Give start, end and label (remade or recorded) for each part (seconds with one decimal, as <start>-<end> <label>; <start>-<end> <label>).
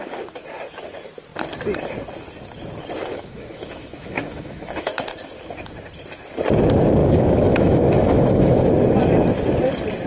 0.0-3.1 recorded; 3.1-4.9 remade; 4.9-7.0 recorded; 7.0-8.6 remade; 8.6-10.1 recorded